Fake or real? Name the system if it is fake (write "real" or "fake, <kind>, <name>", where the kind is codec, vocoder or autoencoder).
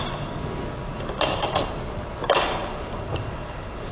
real